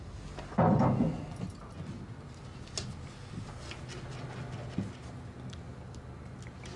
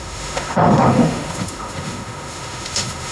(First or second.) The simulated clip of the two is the second